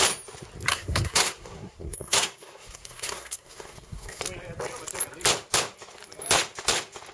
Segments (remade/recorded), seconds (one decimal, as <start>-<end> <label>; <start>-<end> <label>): 0.0-0.7 recorded; 0.7-4.2 remade; 4.2-7.1 recorded